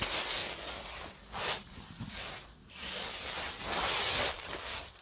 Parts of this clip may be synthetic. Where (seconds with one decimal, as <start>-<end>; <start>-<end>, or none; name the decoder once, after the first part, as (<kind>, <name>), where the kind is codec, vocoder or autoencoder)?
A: none